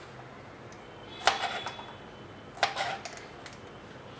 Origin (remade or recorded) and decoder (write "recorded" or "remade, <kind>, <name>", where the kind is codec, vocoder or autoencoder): recorded